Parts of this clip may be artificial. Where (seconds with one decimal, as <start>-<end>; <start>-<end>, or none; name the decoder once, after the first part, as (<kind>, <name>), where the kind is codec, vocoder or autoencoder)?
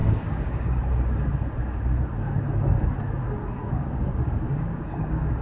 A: 0.0-0.7 (codec, DAC); 3.6-5.4